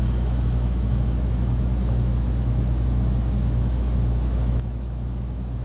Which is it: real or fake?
fake